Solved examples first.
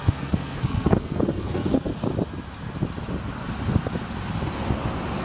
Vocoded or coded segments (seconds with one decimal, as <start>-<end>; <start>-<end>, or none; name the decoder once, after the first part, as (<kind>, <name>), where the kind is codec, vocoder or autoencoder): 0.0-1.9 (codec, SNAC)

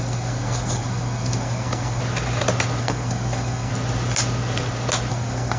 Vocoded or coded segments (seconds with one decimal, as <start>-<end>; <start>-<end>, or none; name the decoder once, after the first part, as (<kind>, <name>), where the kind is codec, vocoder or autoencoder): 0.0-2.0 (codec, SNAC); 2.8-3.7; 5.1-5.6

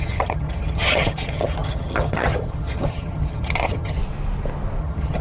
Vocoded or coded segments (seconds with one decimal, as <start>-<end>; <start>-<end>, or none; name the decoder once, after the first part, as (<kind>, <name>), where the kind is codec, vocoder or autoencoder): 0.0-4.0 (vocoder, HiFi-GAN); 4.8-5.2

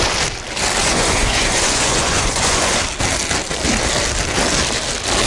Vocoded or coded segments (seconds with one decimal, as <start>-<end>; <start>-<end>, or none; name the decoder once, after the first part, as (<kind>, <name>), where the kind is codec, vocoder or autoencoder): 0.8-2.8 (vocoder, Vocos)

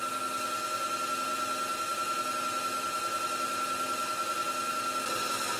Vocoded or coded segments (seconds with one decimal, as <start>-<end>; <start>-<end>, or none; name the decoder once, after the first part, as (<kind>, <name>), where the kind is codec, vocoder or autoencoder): none

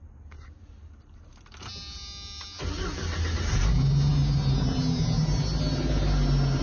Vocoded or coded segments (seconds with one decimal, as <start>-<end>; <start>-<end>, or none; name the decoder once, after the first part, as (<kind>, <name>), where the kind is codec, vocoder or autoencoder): none

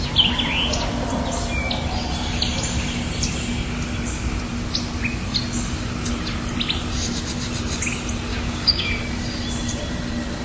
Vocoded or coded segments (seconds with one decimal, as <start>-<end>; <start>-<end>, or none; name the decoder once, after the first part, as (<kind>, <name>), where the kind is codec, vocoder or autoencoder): 8.3-8.9 (codec, DAC)